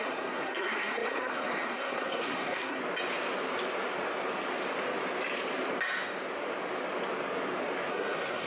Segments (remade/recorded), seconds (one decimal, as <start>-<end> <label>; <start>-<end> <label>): 0.0-2.8 remade; 2.8-7.9 recorded; 7.9-8.5 remade